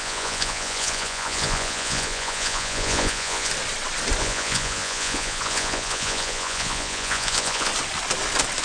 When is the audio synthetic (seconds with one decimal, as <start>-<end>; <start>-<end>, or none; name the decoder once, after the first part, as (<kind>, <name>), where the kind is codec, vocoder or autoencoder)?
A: 0.0-3.5 (vocoder, Vocos); 4.2-7.7

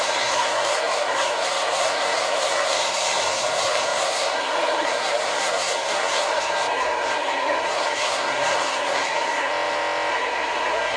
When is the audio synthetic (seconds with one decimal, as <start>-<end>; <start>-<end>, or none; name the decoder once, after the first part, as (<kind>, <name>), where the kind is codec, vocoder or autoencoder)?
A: 0.0-9.5 (codec, SNAC); 10.1-11.0

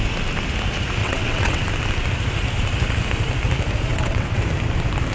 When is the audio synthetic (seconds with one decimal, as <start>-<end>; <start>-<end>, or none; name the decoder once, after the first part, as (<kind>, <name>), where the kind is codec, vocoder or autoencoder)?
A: 1.0-1.6 (vocoder, WaveNeXt); 3.9-4.4